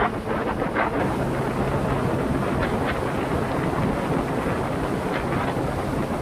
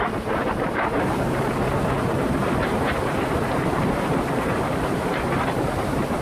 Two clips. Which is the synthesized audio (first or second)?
second